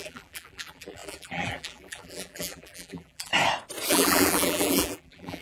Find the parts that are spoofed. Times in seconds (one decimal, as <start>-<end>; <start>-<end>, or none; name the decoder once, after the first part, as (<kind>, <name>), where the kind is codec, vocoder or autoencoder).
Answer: 0.0-3.3 (vocoder, BigVGAN v2); 3.9-5.4